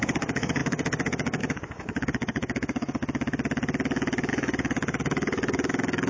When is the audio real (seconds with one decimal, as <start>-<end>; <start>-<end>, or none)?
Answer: 3.0-4.3